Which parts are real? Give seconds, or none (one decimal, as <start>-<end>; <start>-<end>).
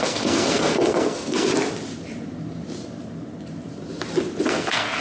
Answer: 1.5-4.5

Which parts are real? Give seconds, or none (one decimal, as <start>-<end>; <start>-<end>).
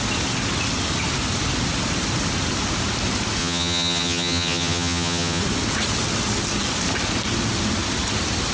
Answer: 0.0-3.4; 5.4-8.5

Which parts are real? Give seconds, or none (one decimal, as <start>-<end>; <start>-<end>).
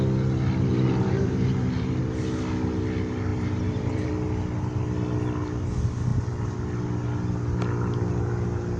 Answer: 0.0-0.7; 2.0-3.3; 4.1-8.8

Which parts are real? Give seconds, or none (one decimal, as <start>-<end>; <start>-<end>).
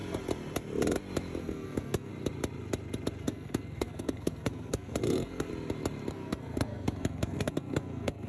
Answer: 0.0-1.4; 2.1-3.2; 5.5-6.1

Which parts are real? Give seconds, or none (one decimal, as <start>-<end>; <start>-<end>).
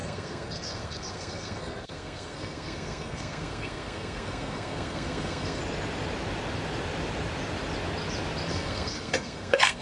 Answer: 5.6-8.5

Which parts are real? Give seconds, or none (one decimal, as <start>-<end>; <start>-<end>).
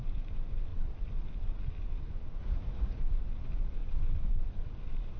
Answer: 0.0-2.4; 3.0-5.2